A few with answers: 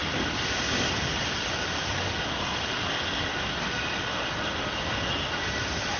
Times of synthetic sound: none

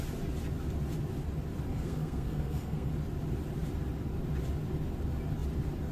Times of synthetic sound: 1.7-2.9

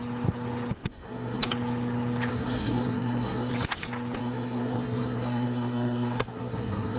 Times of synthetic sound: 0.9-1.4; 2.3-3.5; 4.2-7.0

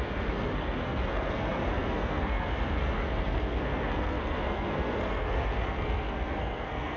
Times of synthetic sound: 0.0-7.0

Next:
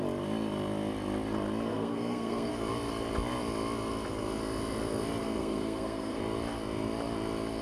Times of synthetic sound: 1.7-2.5; 5.4-6.2